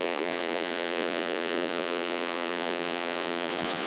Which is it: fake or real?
fake